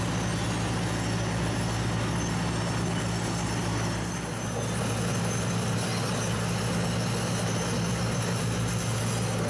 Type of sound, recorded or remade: recorded